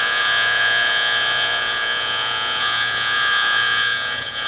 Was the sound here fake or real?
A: fake